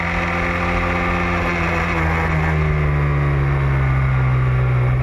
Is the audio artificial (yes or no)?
no